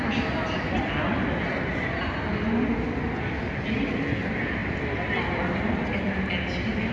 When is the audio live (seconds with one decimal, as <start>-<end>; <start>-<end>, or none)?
0.0-6.9